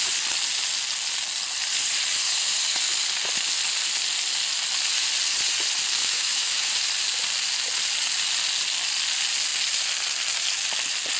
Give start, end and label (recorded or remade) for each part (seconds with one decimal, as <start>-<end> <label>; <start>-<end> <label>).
0.0-6.0 recorded; 6.0-6.7 remade; 6.7-11.2 recorded